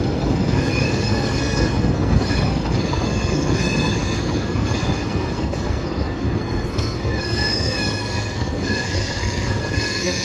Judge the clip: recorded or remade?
remade